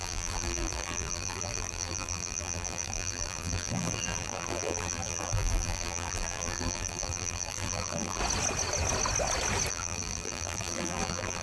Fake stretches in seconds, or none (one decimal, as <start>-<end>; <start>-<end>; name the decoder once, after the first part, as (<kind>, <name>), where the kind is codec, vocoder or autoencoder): 0.0-8.2 (vocoder, BigVGAN v2); 9.7-11.4